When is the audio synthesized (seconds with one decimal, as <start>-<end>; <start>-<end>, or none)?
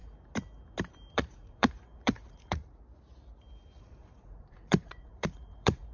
1.1-2.6; 3.8-5.9